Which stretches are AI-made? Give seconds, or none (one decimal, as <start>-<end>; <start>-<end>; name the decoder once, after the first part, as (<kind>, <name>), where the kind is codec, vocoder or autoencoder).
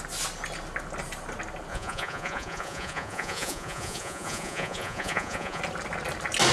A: 1.7-5.6 (vocoder, Vocos)